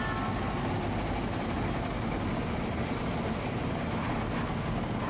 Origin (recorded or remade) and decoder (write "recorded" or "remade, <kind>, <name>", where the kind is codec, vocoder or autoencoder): recorded